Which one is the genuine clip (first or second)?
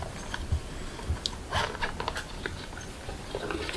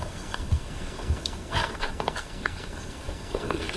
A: first